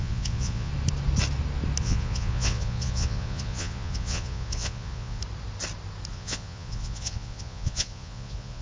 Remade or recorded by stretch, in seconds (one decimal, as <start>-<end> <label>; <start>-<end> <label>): 0.0-0.7 remade; 0.7-1.8 recorded; 1.8-5.2 remade; 5.2-6.1 recorded; 6.1-8.6 remade